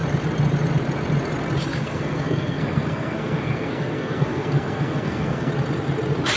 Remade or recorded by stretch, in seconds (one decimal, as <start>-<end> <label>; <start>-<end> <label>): 0.0-1.7 recorded; 1.7-5.5 remade; 5.5-6.4 recorded